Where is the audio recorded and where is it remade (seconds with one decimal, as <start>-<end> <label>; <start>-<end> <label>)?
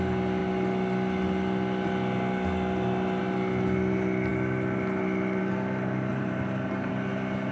0.0-6.1 recorded; 6.1-6.9 remade; 6.9-7.5 recorded